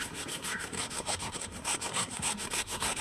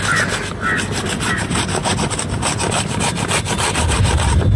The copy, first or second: first